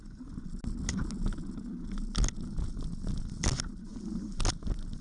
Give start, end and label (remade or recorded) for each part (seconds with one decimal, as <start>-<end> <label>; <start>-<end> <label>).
0.0-5.0 recorded